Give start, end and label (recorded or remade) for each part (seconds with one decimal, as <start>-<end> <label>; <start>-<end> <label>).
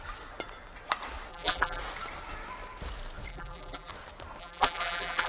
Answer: 0.0-1.3 recorded; 1.3-1.8 remade; 1.8-3.3 recorded; 3.3-3.9 remade; 3.9-4.4 recorded; 4.4-5.3 remade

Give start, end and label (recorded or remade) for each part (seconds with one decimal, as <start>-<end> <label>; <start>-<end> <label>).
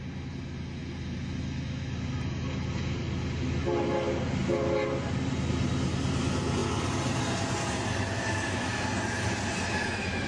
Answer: 0.0-10.3 recorded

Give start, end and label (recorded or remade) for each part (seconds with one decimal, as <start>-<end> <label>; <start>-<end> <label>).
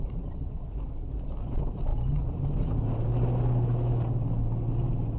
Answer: 0.0-5.2 recorded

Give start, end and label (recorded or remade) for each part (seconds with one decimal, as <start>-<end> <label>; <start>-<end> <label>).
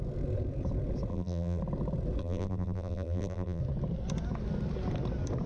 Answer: 0.0-1.1 recorded; 1.1-1.6 remade; 1.6-2.2 recorded; 2.2-3.6 remade; 3.6-5.5 recorded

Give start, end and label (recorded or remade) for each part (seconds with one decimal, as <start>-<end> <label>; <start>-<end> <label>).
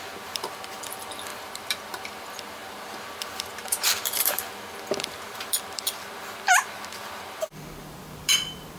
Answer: 0.0-8.8 remade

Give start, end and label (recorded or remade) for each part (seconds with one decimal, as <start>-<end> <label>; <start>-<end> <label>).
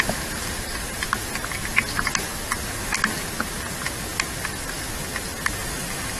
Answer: 0.0-5.6 recorded; 5.6-6.2 remade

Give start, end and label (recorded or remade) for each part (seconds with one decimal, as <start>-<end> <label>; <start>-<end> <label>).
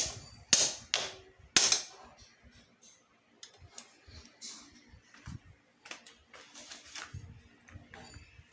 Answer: 0.0-4.1 recorded; 4.1-5.4 remade; 5.4-8.5 recorded